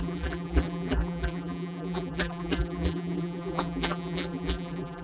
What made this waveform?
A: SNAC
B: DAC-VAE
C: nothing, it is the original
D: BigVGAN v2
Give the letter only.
D